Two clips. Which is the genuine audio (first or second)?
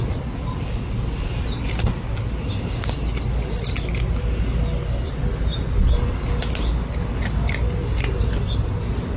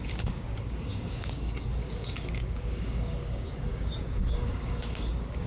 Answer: first